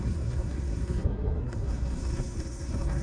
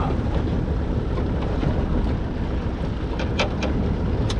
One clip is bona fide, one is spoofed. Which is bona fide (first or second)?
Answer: second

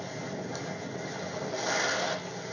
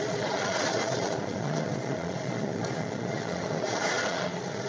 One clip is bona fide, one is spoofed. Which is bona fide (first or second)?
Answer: first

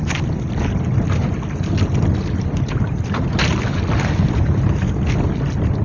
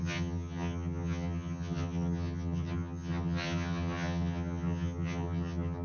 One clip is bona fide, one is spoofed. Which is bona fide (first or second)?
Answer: first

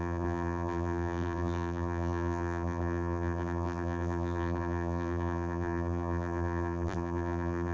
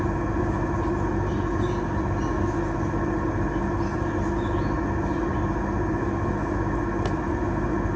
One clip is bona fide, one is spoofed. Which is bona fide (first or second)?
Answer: second